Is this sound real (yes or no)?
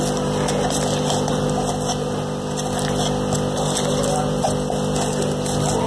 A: no